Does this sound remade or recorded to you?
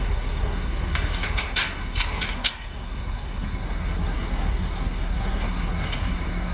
remade